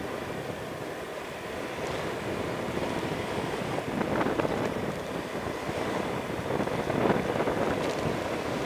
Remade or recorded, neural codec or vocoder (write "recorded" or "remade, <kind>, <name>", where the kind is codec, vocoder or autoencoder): recorded